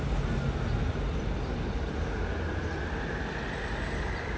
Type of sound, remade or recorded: recorded